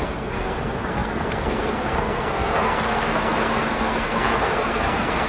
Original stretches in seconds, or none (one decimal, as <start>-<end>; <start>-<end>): none